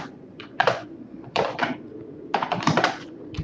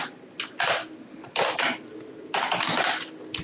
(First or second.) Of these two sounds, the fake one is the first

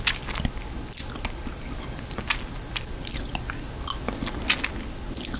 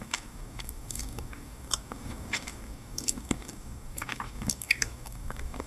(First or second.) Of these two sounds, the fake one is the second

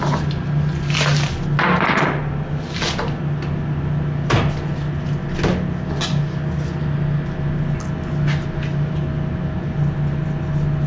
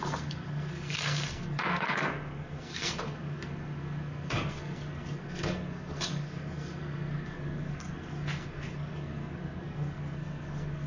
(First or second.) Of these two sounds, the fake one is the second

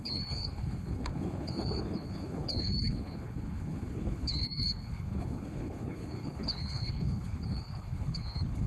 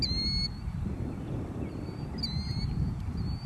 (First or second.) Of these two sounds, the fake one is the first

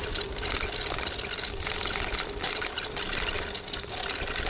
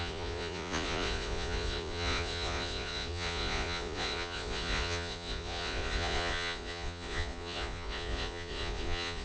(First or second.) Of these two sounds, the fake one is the second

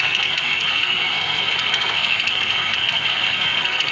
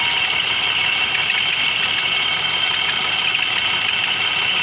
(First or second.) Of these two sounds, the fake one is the first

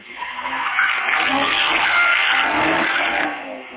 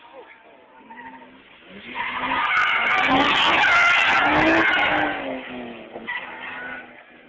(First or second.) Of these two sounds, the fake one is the first